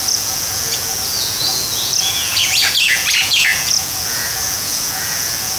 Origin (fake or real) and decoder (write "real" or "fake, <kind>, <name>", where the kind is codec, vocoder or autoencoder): fake, vocoder, Vocos